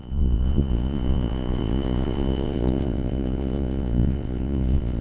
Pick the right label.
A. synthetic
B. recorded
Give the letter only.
A